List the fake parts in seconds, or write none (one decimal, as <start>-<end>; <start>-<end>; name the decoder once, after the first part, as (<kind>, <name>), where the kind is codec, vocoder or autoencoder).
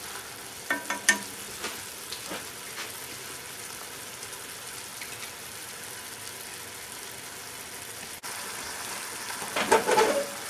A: none